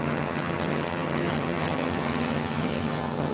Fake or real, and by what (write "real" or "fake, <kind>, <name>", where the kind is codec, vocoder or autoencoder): fake, vocoder, HiFi-GAN